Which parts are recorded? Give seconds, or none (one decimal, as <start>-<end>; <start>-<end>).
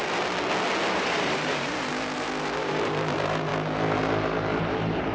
0.0-0.9; 3.5-4.6